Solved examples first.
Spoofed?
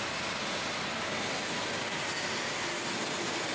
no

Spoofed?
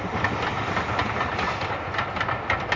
no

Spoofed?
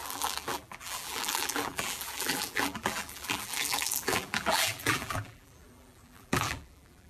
yes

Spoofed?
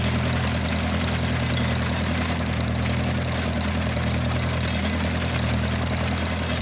no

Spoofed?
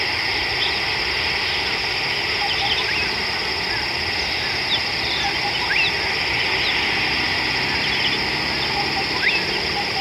no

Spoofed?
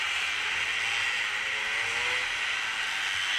no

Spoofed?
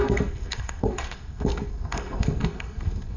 yes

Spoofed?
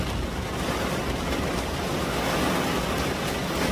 no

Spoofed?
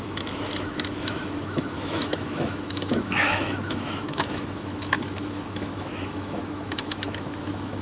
yes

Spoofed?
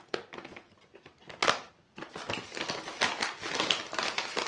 no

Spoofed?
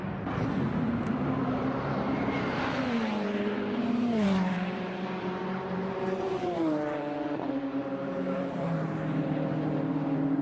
yes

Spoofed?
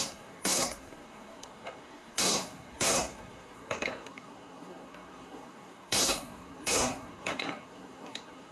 yes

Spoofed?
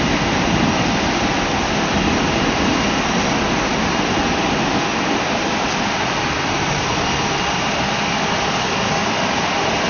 no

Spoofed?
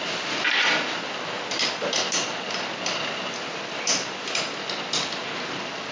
no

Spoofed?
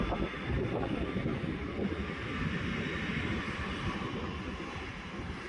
no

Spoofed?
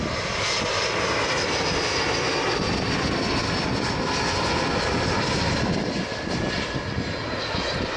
no